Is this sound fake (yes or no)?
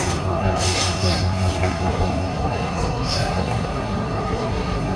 yes